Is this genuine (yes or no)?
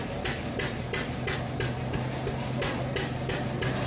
yes